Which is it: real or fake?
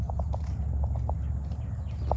real